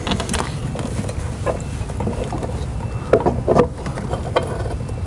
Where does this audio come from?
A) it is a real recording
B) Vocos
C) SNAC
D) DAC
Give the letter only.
A